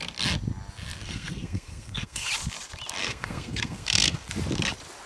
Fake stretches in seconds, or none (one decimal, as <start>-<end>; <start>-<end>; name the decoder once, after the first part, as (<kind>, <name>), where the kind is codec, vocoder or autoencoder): 1.0-2.3 (codec, SNAC); 3.0-4.3